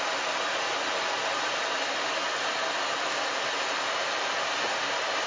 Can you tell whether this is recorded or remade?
recorded